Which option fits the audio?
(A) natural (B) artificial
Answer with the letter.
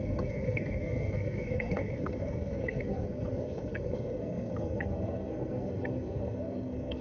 B